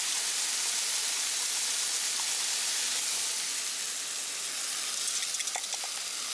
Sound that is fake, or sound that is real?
real